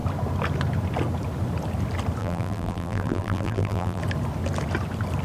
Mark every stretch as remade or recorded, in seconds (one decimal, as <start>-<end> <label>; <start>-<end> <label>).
0.0-2.2 recorded; 2.2-4.0 remade; 4.0-5.2 recorded